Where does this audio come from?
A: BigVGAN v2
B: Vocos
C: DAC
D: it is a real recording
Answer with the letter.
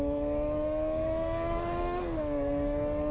C